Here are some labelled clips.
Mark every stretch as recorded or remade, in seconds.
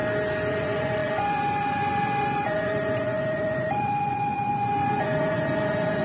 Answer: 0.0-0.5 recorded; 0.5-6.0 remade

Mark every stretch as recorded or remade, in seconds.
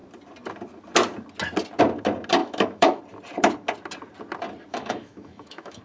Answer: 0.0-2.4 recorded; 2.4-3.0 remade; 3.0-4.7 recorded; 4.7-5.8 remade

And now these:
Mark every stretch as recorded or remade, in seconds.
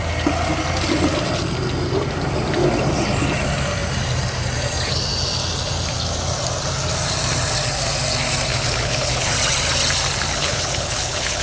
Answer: 0.0-8.5 recorded; 8.5-9.3 remade; 9.3-10.3 recorded; 10.3-11.4 remade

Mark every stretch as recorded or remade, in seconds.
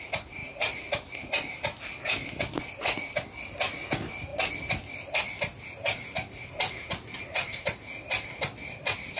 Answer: 0.0-0.4 recorded; 0.4-1.3 remade; 1.3-9.2 recorded